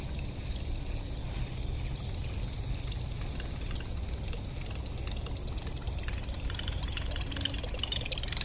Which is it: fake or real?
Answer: real